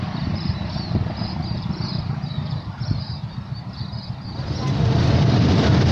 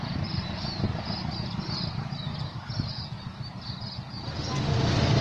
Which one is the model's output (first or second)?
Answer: first